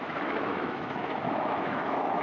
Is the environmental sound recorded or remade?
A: remade